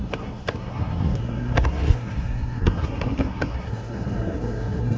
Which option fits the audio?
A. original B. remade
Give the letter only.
B